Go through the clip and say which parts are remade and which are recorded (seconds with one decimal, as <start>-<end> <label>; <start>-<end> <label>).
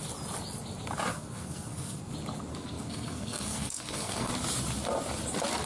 0.0-1.1 recorded; 1.1-2.1 remade; 2.1-2.5 recorded; 2.5-4.3 remade; 4.3-5.7 recorded